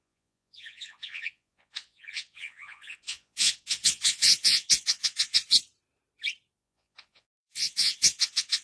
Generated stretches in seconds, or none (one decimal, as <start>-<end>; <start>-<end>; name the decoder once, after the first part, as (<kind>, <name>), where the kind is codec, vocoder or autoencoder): 0.0-5.4 (vocoder, Vocos); 6.6-8.6